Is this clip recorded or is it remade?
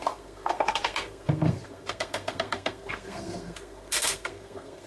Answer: remade